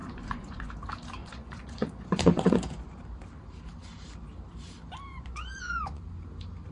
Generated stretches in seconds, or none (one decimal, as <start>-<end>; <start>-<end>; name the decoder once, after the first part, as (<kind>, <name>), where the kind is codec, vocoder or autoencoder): 0.0-0.7 (vocoder, Vocos); 1.2-3.0; 5.1-6.0